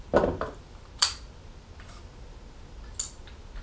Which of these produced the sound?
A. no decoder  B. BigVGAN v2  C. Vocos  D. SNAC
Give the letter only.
A